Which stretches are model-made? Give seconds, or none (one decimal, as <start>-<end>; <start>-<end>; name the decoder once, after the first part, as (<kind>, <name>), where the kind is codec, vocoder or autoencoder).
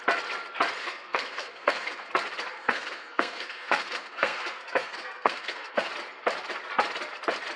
0.8-2.1 (codec, SNAC); 2.5-5.9